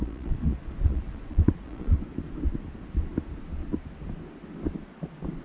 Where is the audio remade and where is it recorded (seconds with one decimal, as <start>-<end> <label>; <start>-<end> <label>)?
0.0-2.0 remade; 2.0-5.4 recorded